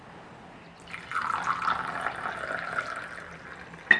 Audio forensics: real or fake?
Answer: real